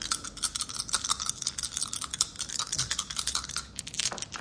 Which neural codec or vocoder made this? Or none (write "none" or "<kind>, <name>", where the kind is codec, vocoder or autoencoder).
none